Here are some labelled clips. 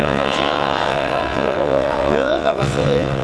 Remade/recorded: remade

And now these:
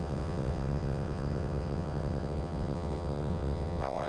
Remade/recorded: remade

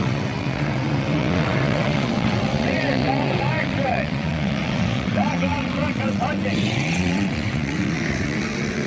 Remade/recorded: remade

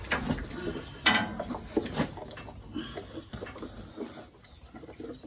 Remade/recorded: recorded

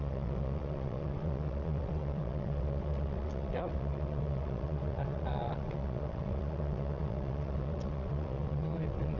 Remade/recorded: remade